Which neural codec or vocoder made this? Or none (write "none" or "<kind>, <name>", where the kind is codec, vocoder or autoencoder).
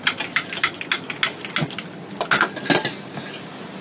none